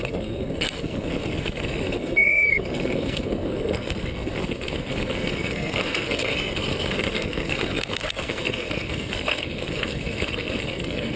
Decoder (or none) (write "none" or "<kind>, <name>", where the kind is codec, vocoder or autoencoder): codec, SNAC